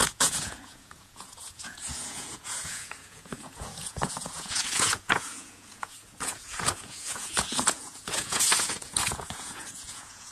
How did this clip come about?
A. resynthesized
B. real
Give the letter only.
A